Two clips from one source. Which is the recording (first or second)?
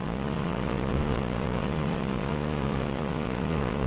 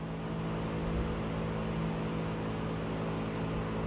second